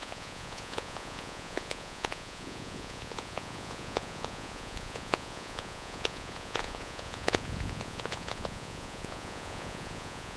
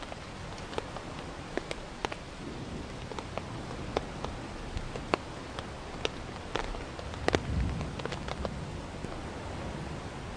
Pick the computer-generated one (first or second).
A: first